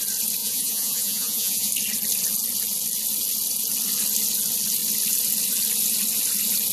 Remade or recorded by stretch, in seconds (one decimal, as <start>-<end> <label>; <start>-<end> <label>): 0.0-0.4 recorded; 0.4-1.7 remade; 1.7-6.7 recorded